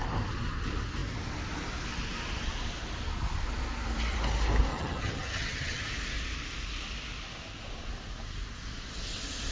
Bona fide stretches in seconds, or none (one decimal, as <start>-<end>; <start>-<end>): 0.0-4.7; 5.8-9.5